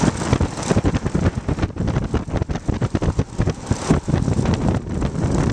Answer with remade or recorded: recorded